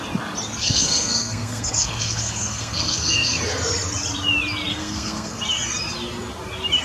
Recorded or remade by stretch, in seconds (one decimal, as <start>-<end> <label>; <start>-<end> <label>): 0.0-0.6 recorded; 0.6-3.4 remade; 3.4-4.7 recorded; 4.7-5.4 remade; 5.4-6.8 recorded